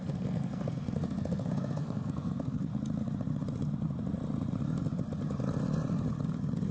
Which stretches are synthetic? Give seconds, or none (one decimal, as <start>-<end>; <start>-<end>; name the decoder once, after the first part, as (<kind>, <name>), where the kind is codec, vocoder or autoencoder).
0.0-2.7 (codec, SNAC)